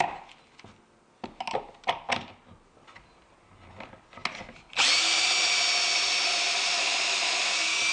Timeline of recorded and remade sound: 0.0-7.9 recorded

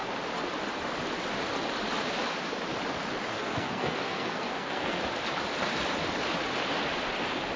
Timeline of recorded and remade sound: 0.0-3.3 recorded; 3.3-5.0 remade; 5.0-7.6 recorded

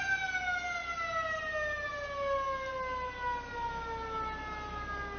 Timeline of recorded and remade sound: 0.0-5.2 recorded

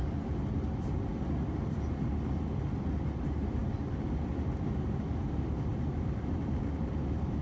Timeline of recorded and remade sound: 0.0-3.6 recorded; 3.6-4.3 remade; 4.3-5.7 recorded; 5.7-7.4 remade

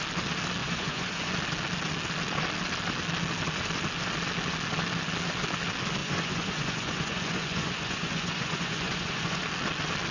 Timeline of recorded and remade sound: 0.0-0.6 recorded; 0.6-1.3 remade; 1.3-6.0 recorded; 6.0-9.4 remade; 9.4-10.1 recorded